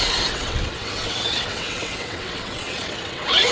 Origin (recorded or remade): remade